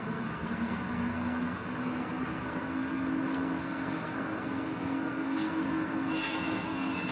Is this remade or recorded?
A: remade